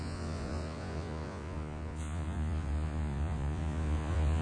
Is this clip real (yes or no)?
no